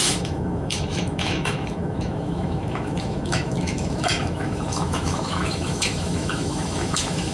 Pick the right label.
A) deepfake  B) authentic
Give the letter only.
A